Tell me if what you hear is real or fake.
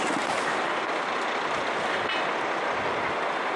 real